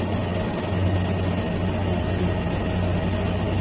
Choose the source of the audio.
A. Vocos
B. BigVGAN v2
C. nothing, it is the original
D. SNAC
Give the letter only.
C